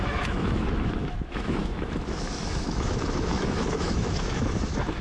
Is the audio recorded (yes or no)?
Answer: no